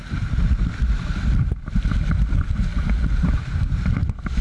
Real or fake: real